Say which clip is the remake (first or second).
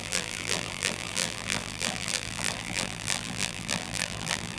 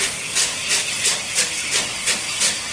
first